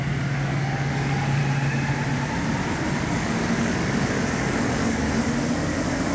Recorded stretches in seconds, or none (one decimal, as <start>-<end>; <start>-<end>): 1.4-3.1